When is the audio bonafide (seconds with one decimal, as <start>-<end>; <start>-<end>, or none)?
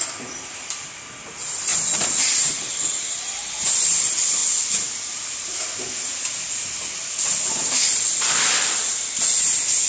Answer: 0.0-9.9